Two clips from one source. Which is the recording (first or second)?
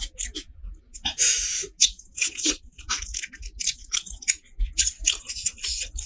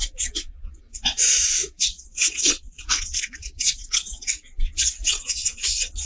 first